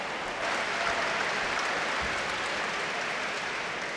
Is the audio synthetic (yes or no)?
no